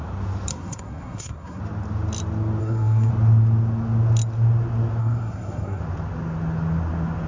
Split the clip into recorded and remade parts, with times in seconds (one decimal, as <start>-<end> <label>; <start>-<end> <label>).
0.0-0.5 recorded; 0.5-1.6 remade; 1.6-2.6 recorded; 2.6-3.1 remade; 3.1-5.0 recorded; 5.0-5.8 remade; 5.8-7.3 recorded